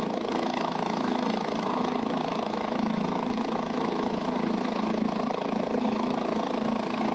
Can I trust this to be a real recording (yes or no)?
no